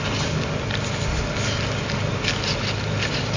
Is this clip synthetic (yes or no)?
no